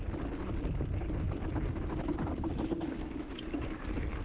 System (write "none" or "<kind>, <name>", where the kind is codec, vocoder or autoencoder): none